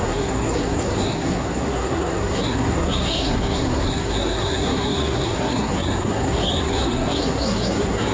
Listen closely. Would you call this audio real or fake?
fake